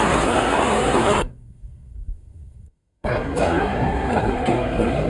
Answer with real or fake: fake